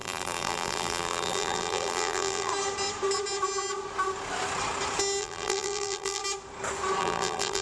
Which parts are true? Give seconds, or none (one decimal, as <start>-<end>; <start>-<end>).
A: 2.5-5.2; 6.2-7.0